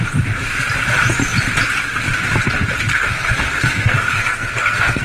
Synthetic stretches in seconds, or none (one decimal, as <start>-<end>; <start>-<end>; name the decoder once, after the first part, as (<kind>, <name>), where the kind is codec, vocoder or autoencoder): 2.9-5.0 (codec, SNAC)